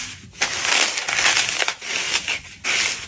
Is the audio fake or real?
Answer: real